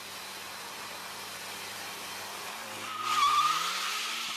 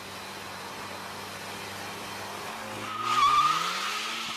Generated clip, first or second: first